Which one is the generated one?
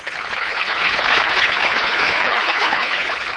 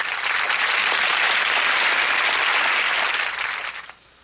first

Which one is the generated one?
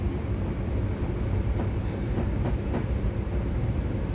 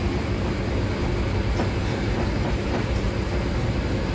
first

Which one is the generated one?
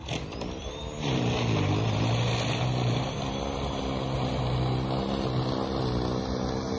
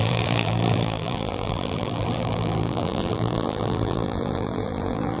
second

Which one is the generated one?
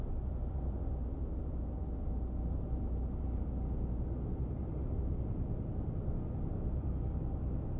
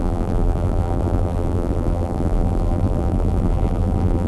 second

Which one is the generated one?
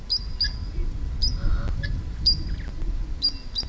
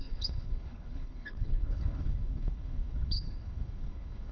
second